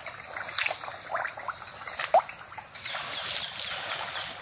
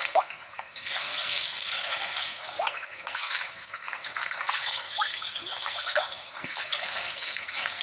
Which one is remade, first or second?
second